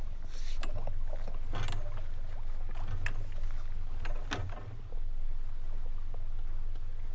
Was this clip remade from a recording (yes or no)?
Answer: no